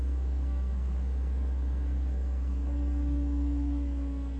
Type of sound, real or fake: fake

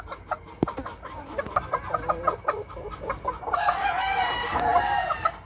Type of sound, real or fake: real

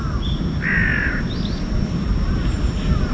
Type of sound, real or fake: real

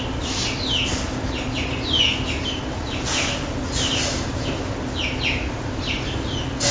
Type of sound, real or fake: real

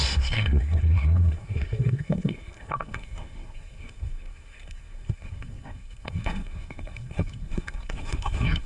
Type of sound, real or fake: fake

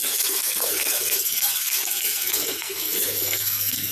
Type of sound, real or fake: fake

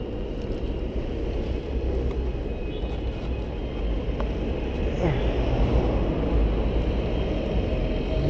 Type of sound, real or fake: real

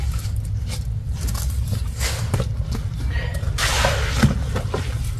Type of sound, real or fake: real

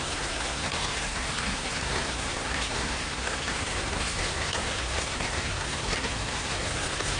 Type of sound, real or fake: fake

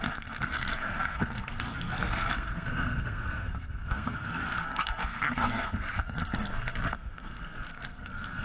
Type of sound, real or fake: fake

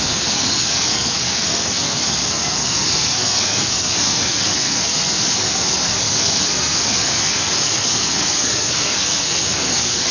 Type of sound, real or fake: fake